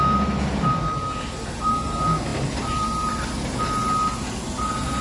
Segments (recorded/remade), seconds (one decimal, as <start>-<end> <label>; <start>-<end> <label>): 0.0-2.3 recorded; 2.3-3.1 remade; 3.1-5.0 recorded